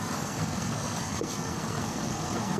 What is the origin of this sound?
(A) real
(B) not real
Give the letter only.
B